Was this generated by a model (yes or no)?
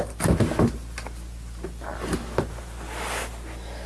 no